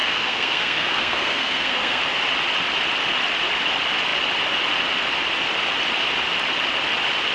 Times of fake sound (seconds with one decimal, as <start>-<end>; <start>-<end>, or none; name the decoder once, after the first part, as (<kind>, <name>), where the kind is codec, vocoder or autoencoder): 0.0-2.0 (codec, SNAC)